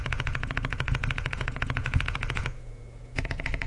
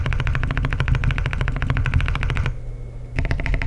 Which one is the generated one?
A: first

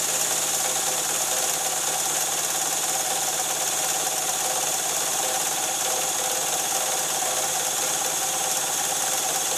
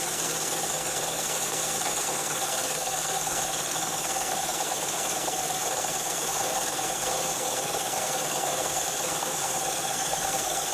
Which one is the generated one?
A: second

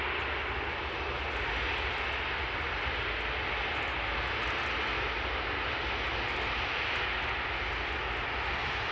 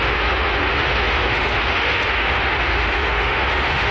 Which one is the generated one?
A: second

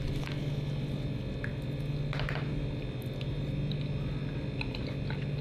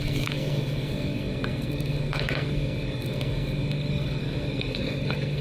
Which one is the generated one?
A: second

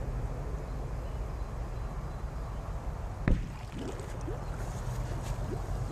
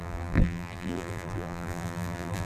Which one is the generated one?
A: second